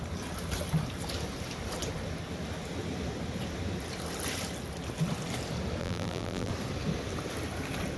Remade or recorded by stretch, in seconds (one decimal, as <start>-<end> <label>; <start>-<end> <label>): 0.0-5.8 recorded; 5.8-6.5 remade; 6.5-8.0 recorded